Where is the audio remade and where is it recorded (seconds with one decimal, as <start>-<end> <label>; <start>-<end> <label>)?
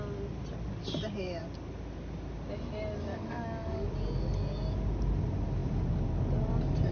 0.0-3.1 recorded; 3.1-3.9 remade; 3.9-6.9 recorded